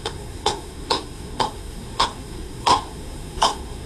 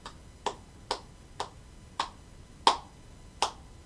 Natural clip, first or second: second